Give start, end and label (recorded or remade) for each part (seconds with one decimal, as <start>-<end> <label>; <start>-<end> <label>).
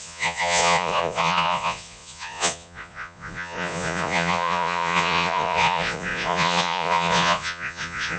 0.0-8.2 remade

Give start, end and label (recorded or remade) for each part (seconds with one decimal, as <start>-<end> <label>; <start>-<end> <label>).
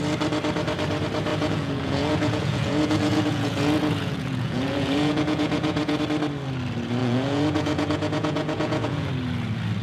0.0-1.3 recorded; 1.3-6.0 remade; 6.0-7.0 recorded; 7.0-9.1 remade; 9.1-9.8 recorded